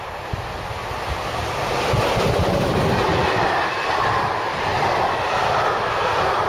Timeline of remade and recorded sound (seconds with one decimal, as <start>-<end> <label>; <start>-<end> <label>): 0.0-6.5 recorded